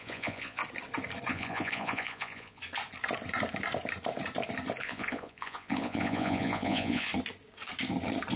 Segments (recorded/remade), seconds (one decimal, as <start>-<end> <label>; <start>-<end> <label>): 0.0-0.6 remade; 0.6-1.3 recorded; 1.3-2.6 remade; 2.6-4.8 recorded; 4.8-7.1 remade; 7.1-8.4 recorded